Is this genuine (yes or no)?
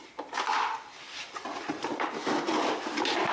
no